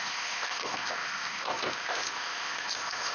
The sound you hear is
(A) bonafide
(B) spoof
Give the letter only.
B